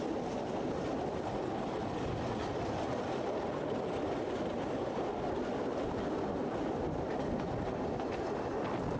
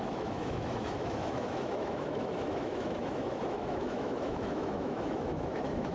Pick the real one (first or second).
first